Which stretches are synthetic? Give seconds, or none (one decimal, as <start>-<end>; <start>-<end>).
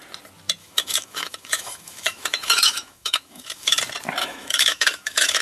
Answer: 0.6-3.8; 4.2-5.4